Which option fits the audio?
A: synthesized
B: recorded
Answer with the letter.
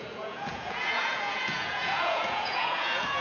A